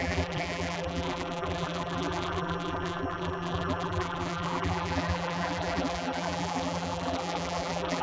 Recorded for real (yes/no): no